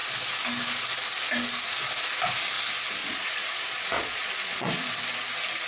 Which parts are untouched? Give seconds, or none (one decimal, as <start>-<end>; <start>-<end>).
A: 0.0-3.0; 5.0-5.7